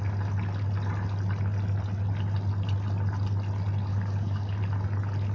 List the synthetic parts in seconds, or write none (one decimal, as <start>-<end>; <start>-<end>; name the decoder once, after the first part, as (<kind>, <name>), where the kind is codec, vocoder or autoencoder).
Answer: 3.9-4.6 (codec, DAC)